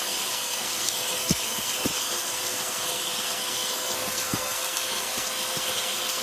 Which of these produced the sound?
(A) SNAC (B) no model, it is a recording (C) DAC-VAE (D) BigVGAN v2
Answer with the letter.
A